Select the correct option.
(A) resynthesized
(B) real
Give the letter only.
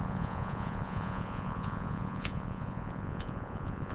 A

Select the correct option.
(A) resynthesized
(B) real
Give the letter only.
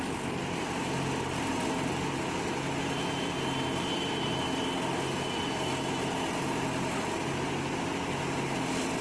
B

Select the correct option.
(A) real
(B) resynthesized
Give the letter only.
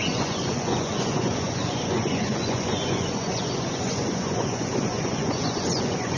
B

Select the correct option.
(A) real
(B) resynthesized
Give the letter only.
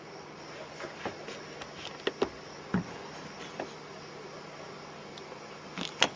A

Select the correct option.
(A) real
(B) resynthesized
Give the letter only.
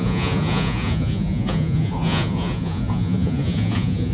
B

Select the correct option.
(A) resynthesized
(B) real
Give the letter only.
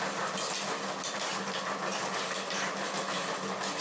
B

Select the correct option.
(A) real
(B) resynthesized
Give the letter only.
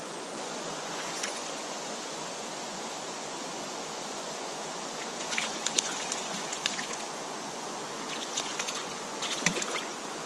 B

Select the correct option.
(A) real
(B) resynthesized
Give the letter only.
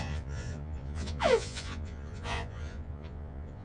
B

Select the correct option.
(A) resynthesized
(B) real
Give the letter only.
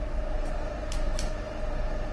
B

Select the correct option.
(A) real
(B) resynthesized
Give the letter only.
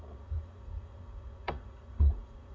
B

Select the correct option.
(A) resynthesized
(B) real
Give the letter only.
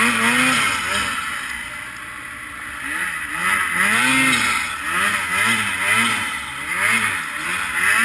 B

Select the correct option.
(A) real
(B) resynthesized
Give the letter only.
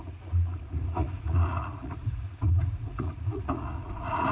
B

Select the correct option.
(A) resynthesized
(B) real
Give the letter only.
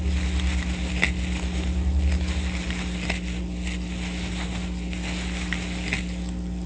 B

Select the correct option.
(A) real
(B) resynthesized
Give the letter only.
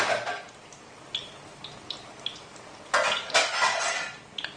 A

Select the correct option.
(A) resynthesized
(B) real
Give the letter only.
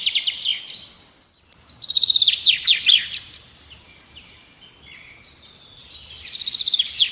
B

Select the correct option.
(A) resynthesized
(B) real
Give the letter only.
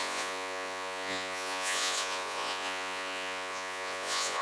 A